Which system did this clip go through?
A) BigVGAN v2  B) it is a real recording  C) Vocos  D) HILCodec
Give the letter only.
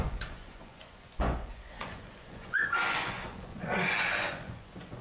C